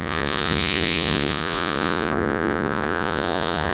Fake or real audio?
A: fake